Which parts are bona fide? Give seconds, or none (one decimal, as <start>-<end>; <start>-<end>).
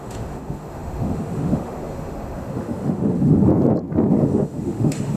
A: 3.5-4.1